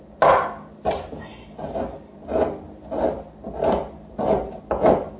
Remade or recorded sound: recorded